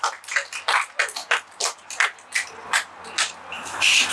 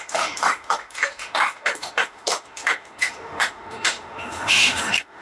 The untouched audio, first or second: first